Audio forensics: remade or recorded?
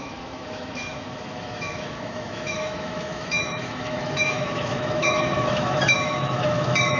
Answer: remade